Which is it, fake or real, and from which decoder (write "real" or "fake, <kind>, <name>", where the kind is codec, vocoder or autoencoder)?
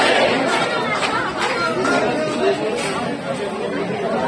real